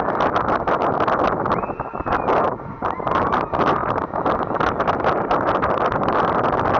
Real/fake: real